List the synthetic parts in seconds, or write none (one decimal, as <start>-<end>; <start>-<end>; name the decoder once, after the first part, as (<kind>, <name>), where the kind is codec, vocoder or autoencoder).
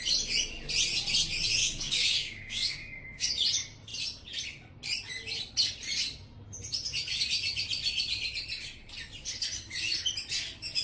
1.6-3.3 (codec, DAC)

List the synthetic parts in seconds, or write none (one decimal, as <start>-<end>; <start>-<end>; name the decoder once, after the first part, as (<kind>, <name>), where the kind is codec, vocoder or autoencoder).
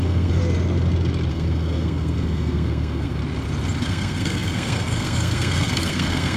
0.0-0.4 (codec, SNAC); 1.3-3.2; 3.8-6.4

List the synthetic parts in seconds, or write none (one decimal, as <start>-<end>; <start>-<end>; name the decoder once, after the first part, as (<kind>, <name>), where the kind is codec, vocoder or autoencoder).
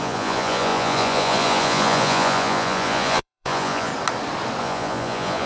0.0-3.9 (vocoder, Vocos); 4.6-5.5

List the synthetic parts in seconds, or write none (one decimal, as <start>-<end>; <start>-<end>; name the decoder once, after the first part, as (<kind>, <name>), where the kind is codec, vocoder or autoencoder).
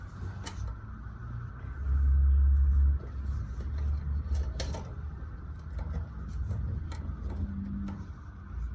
none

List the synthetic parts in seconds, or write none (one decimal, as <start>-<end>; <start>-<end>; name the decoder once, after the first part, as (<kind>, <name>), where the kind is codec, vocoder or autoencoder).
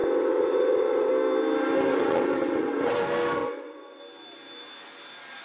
0.0-1.1 (vocoder, WaveNeXt); 1.9-3.0; 3.4-4.0